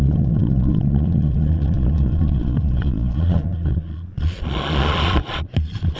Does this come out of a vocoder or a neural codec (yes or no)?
yes